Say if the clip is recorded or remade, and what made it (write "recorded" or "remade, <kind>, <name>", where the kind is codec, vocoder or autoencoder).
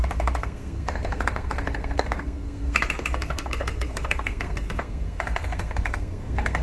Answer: remade, codec, SNAC